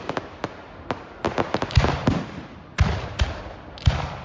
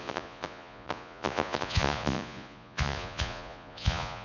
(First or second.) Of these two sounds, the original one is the first